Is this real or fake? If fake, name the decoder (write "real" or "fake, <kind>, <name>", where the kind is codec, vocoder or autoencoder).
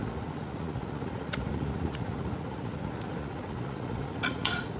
fake, vocoder, Vocos